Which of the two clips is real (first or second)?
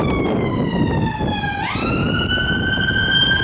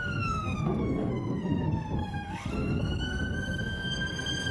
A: first